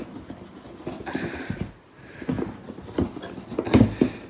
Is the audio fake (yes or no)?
no